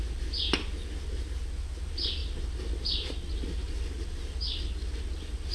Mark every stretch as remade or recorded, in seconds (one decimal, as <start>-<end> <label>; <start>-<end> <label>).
0.0-5.5 recorded